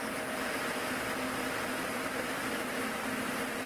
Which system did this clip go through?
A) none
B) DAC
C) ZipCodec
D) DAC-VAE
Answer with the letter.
A